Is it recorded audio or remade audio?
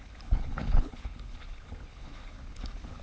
remade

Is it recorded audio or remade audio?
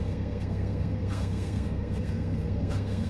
remade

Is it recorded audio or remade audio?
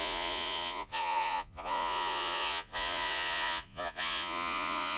remade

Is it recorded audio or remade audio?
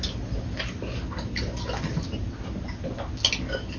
recorded